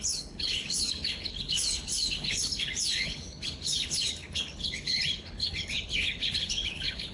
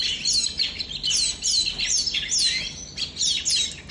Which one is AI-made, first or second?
first